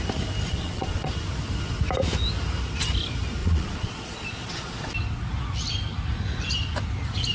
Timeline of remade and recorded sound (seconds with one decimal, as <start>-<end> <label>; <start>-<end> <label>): 0.0-0.5 recorded; 0.5-1.1 remade; 1.1-3.4 recorded; 3.4-4.9 remade; 4.9-7.3 recorded